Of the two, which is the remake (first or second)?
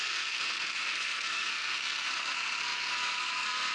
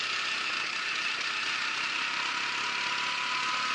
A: first